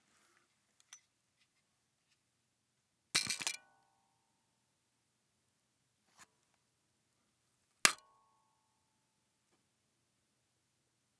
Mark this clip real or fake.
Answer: real